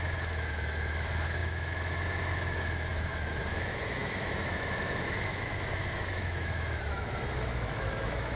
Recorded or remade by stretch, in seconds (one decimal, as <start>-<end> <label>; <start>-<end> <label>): 0.0-8.4 remade